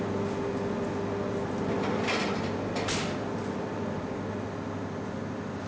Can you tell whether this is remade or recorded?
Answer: recorded